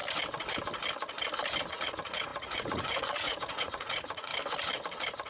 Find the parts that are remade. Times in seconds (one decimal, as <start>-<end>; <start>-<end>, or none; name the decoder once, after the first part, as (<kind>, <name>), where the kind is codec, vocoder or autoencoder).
1.7-4.3 (vocoder, Vocos)